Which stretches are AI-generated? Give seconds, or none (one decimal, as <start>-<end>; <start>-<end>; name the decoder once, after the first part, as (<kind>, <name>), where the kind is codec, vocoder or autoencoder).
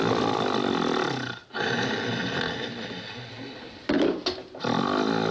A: none